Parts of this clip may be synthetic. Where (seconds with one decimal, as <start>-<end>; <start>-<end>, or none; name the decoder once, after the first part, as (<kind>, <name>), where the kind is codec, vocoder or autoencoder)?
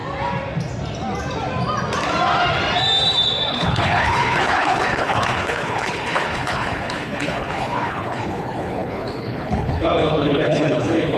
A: 3.5-11.2 (codec, HILCodec)